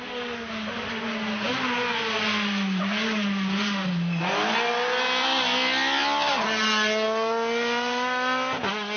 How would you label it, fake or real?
real